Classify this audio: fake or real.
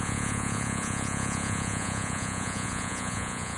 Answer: fake